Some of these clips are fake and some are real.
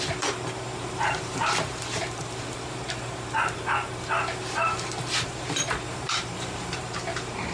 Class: fake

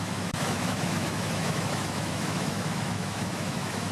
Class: fake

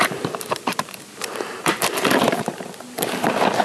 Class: fake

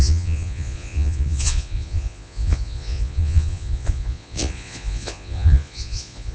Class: fake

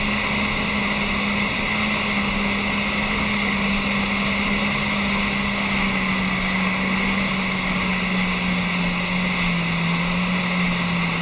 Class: real